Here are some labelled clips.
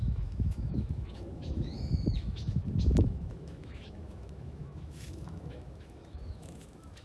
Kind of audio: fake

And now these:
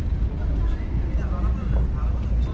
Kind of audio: real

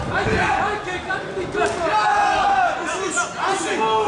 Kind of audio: real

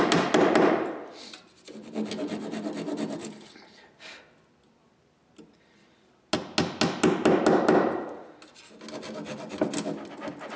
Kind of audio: real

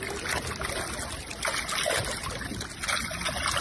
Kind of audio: real